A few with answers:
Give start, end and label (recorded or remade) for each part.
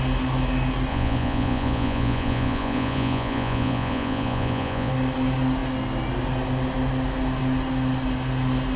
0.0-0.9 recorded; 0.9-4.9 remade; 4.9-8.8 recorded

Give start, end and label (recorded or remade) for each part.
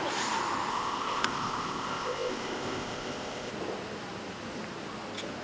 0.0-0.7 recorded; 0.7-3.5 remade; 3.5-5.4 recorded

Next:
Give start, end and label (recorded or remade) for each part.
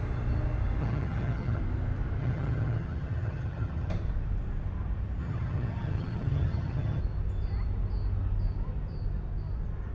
0.0-0.8 recorded; 0.8-1.6 remade; 1.6-2.2 recorded; 2.2-3.9 remade; 3.9-5.2 recorded; 5.2-7.0 remade; 7.0-9.9 recorded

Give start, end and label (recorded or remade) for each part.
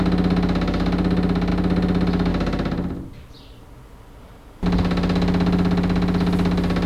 0.0-6.9 recorded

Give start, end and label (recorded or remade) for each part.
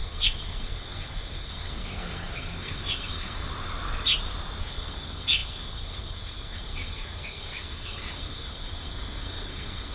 0.0-3.5 remade; 3.5-4.6 recorded; 4.6-9.9 remade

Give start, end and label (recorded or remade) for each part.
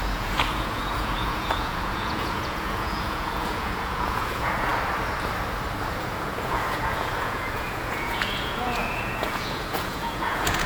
0.0-4.7 remade; 4.7-5.8 recorded; 5.8-10.7 remade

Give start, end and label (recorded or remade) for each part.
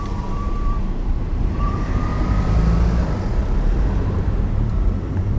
0.0-2.1 remade; 2.1-3.4 recorded; 3.4-5.4 remade